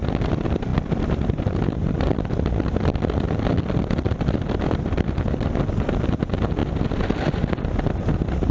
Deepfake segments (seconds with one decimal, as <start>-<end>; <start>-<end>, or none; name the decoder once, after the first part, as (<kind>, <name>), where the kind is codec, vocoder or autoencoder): 0.0-6.6 (vocoder, BigVGAN v2); 7.3-8.5